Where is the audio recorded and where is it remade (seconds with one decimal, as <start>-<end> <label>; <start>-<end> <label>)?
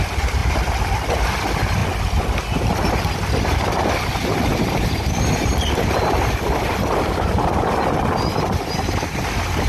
0.0-4.5 recorded; 4.5-6.4 remade; 6.4-9.7 recorded